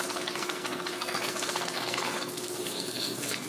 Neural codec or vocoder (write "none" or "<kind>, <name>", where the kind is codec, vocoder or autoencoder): codec, SNAC